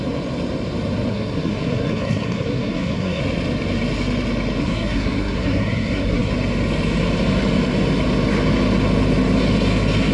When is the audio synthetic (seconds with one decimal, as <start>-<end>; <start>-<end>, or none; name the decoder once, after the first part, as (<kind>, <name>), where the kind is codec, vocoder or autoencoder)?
1.1-3.2 (codec, SNAC); 4.6-6.3